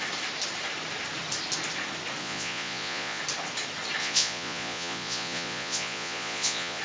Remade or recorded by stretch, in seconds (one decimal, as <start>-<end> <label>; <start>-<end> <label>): 0.0-2.2 recorded; 2.2-3.2 remade; 3.2-4.0 recorded; 4.0-6.8 remade